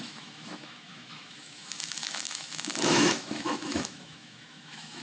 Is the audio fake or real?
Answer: fake